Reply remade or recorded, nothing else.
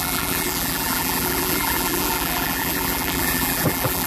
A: remade